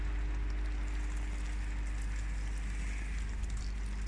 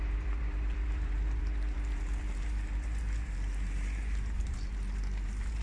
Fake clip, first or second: second